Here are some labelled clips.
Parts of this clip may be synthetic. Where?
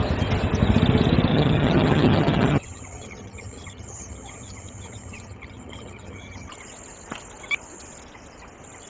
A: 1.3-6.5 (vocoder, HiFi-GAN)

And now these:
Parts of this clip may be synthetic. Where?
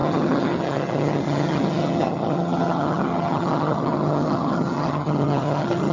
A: 0.0-5.9 (vocoder, HiFi-GAN)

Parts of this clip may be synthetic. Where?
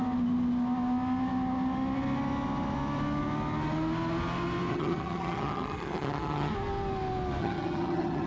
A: 4.7-6.5 (vocoder, HiFi-GAN); 7.4-8.3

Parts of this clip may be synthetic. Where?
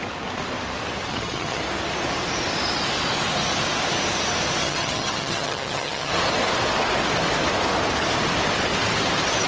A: 1.1-1.6 (vocoder, HiFi-GAN); 4.6-6.1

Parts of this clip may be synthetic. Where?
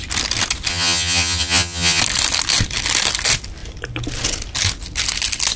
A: 0.7-2.0 (vocoder, HiFi-GAN)